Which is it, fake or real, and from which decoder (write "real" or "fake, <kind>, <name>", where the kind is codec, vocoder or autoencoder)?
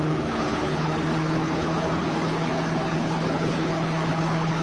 fake, codec, HILCodec